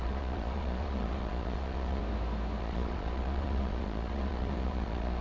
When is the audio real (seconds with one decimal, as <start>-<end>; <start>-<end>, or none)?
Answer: 2.0-2.6